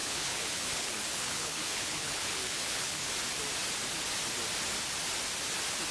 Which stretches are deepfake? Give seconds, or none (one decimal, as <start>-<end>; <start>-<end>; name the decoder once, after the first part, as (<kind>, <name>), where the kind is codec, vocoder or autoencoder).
0.0-3.1 (codec, HILCodec)